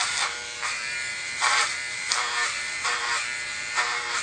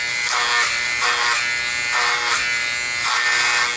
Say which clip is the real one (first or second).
second